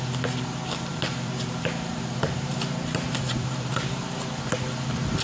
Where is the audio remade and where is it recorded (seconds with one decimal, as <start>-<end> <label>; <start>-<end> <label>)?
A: 0.0-0.9 recorded; 0.9-4.0 remade; 4.0-5.2 recorded